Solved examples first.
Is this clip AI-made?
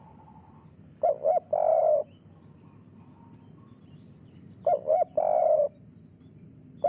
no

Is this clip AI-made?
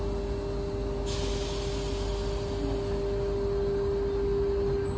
no